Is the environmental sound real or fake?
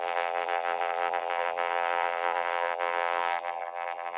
fake